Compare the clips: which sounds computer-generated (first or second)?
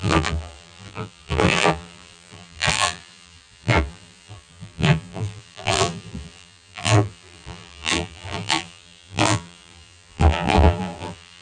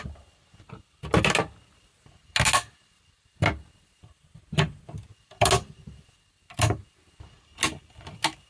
first